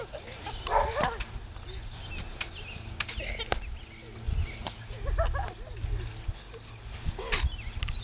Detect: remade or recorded recorded